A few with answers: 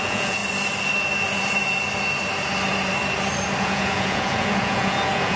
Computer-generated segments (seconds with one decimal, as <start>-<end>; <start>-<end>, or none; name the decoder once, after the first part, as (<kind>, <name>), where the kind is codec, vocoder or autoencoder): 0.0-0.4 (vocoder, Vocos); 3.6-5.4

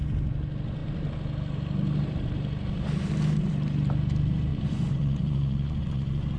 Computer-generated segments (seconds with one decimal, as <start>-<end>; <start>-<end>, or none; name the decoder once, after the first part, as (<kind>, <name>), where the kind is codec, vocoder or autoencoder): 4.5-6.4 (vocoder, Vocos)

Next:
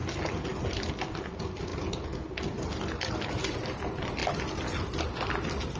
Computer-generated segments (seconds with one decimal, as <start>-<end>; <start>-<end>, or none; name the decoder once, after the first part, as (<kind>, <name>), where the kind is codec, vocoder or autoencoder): none